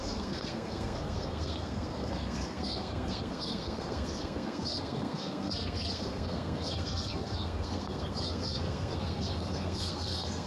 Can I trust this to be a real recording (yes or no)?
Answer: no